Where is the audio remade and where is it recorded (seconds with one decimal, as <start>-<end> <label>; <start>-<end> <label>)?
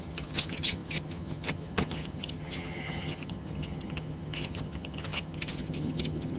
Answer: 0.0-6.4 remade